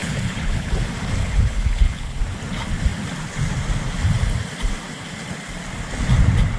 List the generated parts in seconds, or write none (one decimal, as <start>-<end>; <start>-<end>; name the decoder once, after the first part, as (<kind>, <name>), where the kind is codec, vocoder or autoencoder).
0.0-0.7 (codec, HILCodec); 1.2-2.2